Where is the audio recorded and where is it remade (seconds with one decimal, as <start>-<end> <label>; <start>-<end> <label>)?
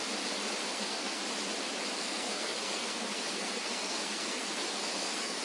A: 0.0-0.6 recorded; 0.6-1.2 remade; 1.2-2.0 recorded; 2.0-5.4 remade